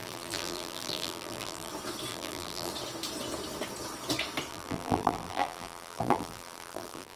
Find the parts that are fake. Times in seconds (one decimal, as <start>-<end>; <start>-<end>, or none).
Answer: 0.0-1.7; 2.1-2.7; 4.5-7.2